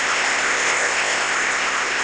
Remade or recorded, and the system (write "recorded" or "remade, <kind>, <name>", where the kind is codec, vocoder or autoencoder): remade, codec, ZipCodec